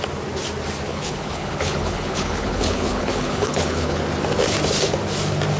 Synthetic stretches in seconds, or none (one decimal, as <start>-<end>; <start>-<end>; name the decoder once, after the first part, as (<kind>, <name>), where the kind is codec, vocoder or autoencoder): 0.9-4.0 (codec, HILCodec)